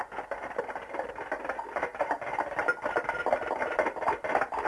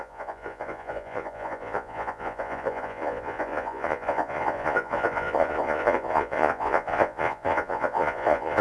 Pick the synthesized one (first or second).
second